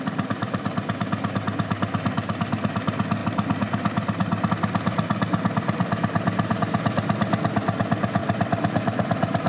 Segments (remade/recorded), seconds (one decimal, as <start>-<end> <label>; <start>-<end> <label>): 0.0-9.5 recorded